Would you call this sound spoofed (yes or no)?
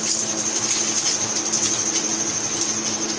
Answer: no